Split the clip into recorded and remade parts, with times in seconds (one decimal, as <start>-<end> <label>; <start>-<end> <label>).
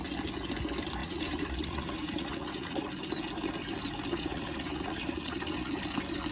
0.0-1.0 recorded; 1.0-2.9 remade; 2.9-4.1 recorded; 4.1-5.7 remade; 5.7-6.3 recorded